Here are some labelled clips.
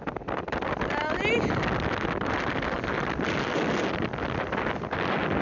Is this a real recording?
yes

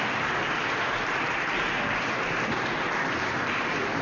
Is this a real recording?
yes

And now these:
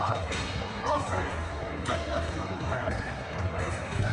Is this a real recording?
no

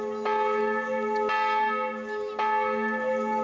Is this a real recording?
yes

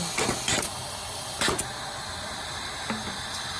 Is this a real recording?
yes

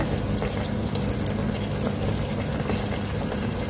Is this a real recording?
yes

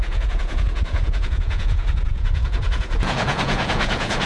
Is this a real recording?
no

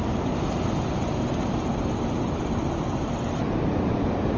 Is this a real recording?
yes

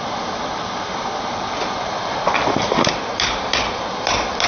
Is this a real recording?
no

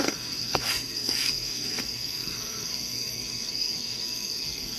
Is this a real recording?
no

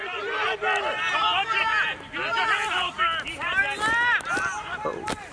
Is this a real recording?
yes